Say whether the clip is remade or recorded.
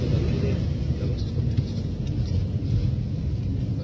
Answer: recorded